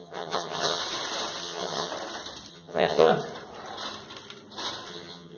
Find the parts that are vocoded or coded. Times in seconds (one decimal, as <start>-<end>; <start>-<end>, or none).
0.0-0.8; 1.4-1.9; 2.5-3.1; 4.9-5.4